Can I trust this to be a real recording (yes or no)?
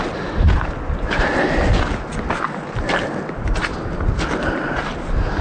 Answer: yes